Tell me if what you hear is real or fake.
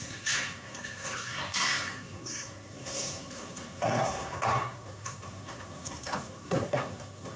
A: fake